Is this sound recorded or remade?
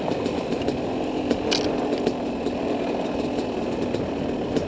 recorded